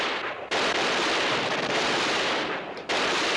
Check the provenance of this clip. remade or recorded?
remade